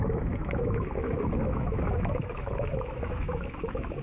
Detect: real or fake fake